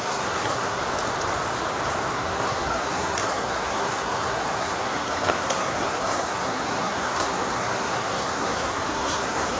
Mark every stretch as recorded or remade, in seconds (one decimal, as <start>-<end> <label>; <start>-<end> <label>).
0.0-0.8 remade; 0.8-2.1 recorded; 2.1-9.6 remade